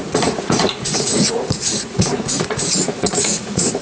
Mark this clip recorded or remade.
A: remade